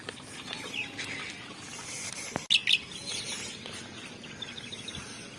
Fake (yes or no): no